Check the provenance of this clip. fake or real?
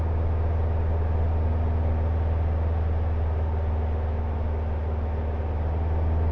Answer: real